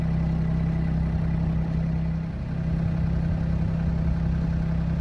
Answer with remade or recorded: recorded